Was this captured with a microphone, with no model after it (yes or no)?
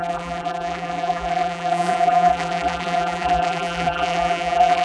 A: no